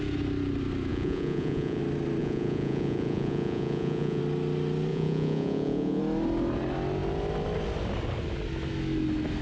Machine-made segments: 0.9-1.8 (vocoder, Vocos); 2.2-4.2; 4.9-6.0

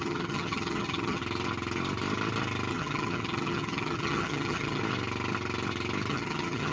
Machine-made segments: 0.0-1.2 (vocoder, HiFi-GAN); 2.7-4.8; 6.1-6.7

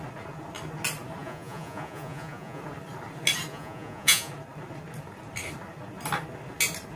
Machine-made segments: 1.2-2.6 (vocoder, Vocos); 3.5-4.3

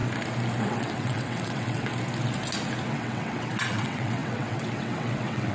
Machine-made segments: 0.6-1.9 (vocoder, WaveNeXt); 2.9-5.5

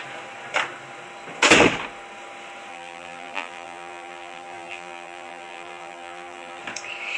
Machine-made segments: 2.7-6.6 (vocoder, BigVGAN v2)

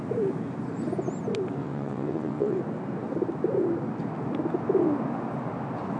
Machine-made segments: 1.6-2.6 (vocoder, WaveNeXt)